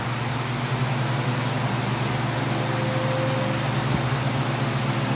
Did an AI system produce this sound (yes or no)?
no